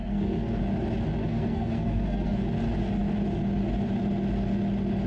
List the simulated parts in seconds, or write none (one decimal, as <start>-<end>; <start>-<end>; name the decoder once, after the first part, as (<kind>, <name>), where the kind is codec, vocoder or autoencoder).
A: 0.0-0.6 (codec, SNAC); 1.2-2.4